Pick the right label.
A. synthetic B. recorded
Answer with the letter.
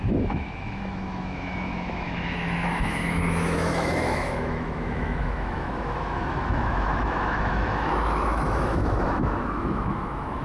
A